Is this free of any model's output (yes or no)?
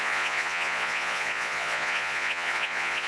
no